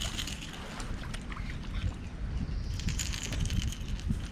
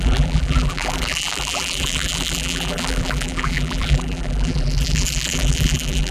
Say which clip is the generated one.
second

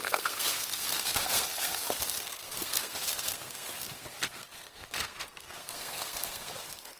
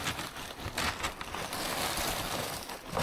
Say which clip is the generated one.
first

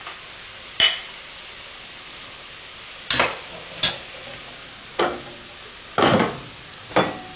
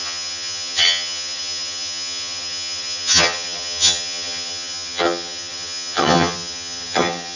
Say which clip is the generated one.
second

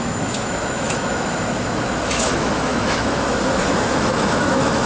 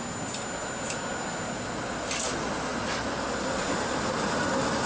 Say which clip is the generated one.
first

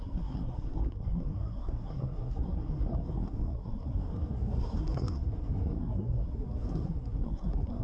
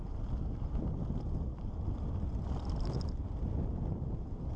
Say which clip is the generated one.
first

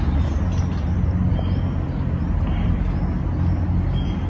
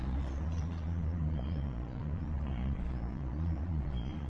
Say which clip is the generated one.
second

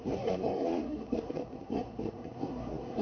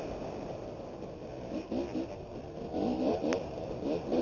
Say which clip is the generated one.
first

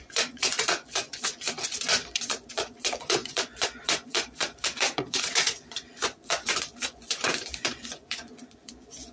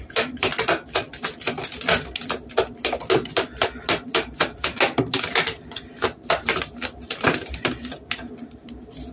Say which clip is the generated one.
first